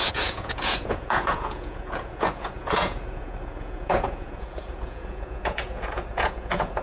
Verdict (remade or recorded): remade